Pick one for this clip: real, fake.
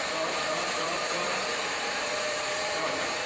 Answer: fake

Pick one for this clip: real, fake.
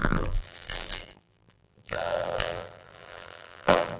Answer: fake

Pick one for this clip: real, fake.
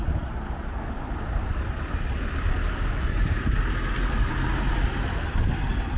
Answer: real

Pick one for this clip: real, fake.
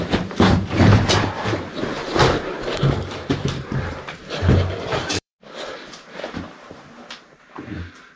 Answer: fake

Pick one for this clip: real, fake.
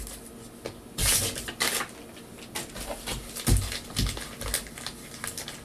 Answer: real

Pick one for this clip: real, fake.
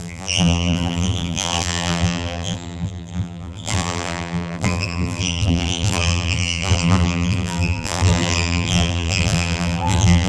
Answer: fake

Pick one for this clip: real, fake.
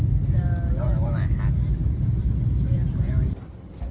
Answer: fake